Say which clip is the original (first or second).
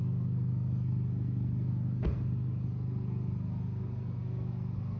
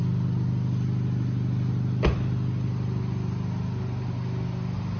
second